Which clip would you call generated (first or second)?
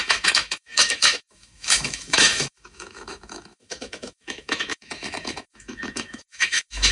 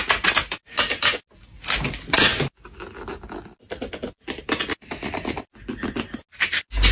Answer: first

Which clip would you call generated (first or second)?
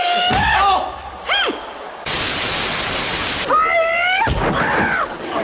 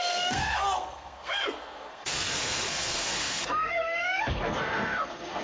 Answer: second